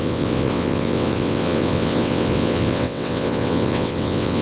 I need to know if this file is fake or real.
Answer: fake